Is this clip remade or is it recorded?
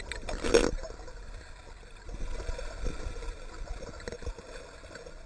recorded